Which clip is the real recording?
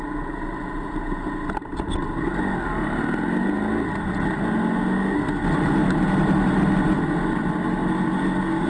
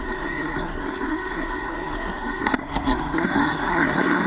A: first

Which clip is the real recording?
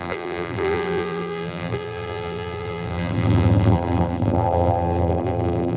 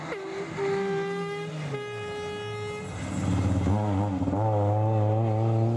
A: second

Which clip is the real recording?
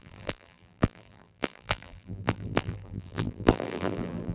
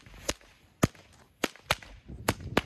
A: second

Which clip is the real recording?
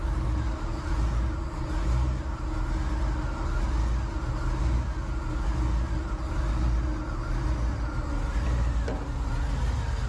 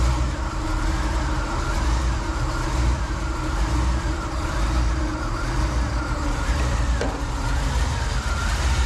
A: first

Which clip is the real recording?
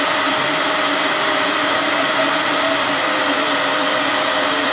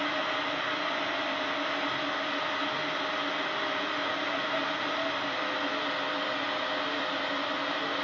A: second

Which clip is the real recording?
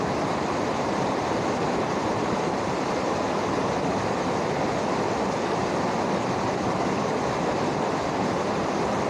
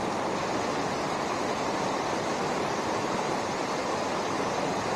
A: second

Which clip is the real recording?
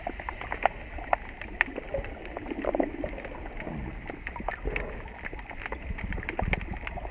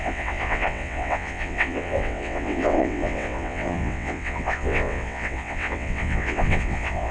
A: first